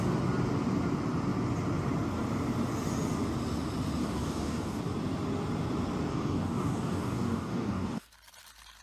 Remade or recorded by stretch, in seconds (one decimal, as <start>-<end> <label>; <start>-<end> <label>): 0.0-4.0 recorded; 4.0-4.8 remade; 4.8-6.1 recorded; 6.1-8.1 remade; 8.1-8.8 recorded